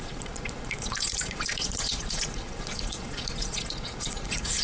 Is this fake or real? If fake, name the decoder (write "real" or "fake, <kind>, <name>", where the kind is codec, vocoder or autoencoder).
fake, vocoder, Vocos